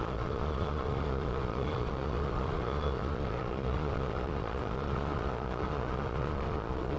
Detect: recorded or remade remade